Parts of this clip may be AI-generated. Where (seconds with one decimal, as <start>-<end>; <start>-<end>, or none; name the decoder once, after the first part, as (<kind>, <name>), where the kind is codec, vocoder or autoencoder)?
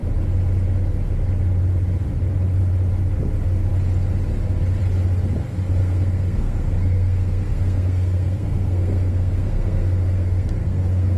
5.8-11.2 (codec, SNAC)